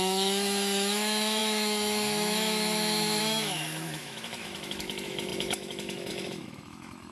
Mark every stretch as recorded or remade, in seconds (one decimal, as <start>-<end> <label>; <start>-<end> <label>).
0.0-7.1 remade